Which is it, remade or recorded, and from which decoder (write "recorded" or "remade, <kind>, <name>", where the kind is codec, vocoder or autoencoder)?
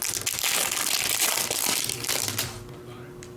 recorded